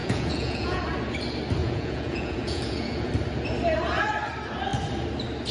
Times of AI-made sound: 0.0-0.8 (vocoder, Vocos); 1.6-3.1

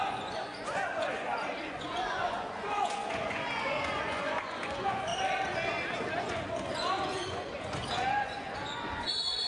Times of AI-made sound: 0.0-5.1 (vocoder, Vocos); 6.2-9.5

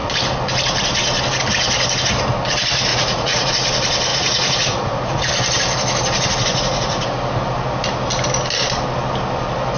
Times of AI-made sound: 2.9-3.5 (vocoder, Vocos); 4.1-5.2; 6.5-7.1

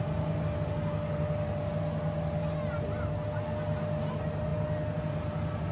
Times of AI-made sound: none

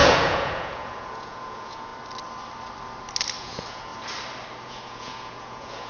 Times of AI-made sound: 0.0-1.9 (vocoder, Vocos); 3.4-3.9; 4.6-5.9

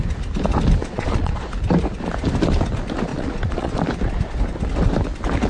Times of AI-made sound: 0.8-1.5 (vocoder, Vocos); 3.1-3.8